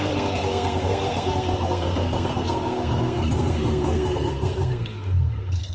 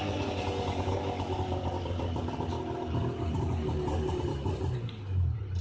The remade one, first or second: first